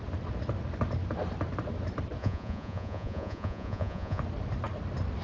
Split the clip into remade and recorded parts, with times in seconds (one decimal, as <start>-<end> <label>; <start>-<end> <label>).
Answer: 0.0-2.2 recorded; 2.2-4.2 remade; 4.2-5.2 recorded